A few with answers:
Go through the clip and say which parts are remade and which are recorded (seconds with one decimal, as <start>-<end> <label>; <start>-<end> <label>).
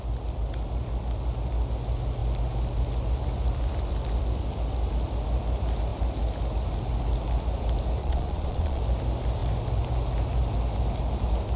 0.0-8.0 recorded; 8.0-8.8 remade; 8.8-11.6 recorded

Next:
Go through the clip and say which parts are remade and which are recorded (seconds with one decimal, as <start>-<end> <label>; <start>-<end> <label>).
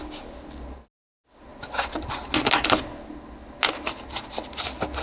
0.0-5.0 recorded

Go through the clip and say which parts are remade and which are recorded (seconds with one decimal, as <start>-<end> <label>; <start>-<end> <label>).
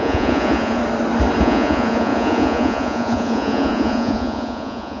0.0-0.8 remade; 0.8-1.4 recorded; 1.4-5.0 remade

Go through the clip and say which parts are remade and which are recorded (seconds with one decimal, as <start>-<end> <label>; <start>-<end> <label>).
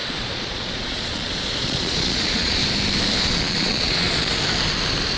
0.0-2.6 remade; 2.6-3.2 recorded; 3.2-4.3 remade; 4.3-5.2 recorded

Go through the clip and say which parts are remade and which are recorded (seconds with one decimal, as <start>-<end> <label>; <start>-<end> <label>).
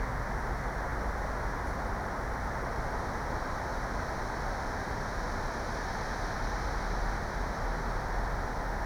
0.0-8.9 recorded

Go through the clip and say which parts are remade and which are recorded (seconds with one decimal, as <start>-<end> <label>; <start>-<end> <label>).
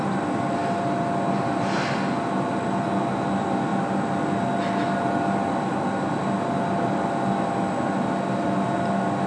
0.0-9.3 recorded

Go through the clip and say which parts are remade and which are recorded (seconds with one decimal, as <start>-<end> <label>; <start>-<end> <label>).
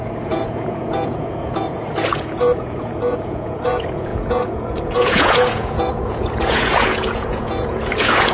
0.0-8.3 remade